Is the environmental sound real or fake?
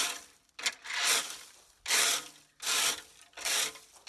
real